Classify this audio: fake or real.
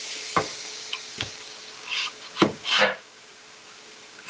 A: fake